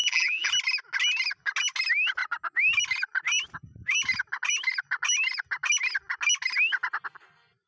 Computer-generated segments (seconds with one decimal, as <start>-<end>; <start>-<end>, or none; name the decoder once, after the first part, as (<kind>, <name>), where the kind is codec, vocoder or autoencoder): 0.0-0.5 (vocoder, BigVGAN v2)